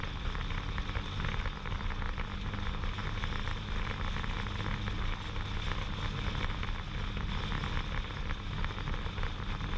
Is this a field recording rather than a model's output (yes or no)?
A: yes